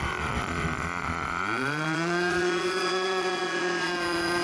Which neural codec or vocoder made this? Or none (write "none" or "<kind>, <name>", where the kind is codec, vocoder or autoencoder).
vocoder, Vocos